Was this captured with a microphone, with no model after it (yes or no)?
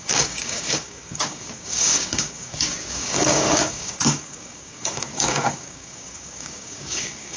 no